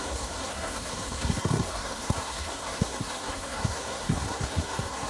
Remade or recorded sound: remade